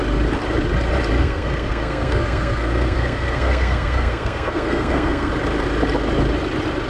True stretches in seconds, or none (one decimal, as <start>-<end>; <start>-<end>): 0.0-1.2; 5.3-6.9

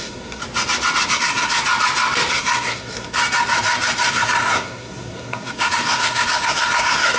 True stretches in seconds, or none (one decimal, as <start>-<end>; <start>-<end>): 0.4-1.1; 1.6-2.3; 3.2-4.1